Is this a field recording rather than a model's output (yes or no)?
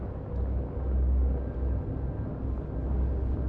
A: yes